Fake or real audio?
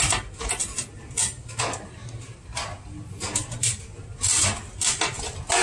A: real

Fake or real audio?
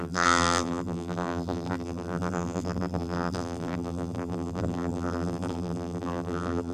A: fake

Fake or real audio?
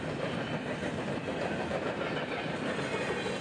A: real